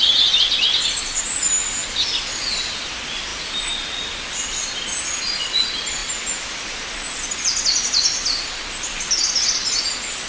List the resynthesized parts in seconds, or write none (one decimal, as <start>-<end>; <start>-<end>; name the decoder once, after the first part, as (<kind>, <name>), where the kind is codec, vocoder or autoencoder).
none